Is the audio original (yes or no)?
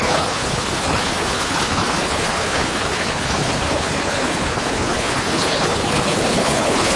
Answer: no